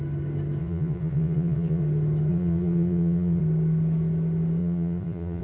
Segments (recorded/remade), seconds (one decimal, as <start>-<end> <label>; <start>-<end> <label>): 0.0-0.6 recorded; 0.6-1.8 remade; 1.8-2.3 recorded; 2.3-3.4 remade; 3.4-4.6 recorded; 4.6-5.4 remade